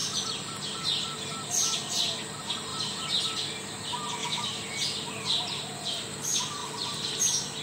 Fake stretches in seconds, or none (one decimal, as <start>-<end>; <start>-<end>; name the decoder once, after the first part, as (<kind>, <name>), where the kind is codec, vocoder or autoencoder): 2.7-3.2 (vocoder, BigVGAN v2); 4.2-4.7; 6.6-7.6